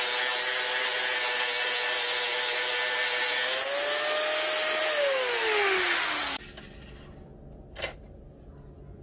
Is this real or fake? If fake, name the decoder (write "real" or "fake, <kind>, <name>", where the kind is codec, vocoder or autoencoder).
real